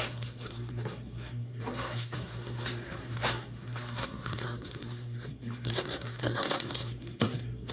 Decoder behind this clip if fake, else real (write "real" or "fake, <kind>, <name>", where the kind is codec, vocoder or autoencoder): fake, codec, SNAC